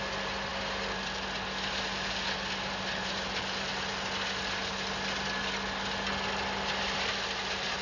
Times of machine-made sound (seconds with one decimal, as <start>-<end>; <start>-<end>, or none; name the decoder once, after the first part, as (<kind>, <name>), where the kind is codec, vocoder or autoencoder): none